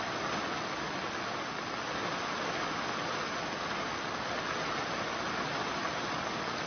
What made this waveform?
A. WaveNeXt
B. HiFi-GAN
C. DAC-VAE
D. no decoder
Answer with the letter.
D